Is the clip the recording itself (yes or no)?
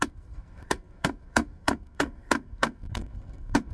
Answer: no